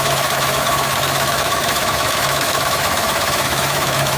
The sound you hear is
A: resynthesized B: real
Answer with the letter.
A